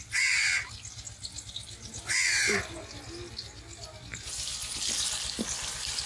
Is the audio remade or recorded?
recorded